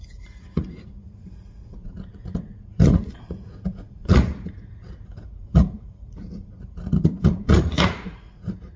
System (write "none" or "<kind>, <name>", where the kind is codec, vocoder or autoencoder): vocoder, Vocos